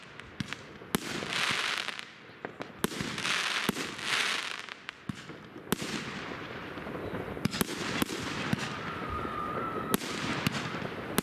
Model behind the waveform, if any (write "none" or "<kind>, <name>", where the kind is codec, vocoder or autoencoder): none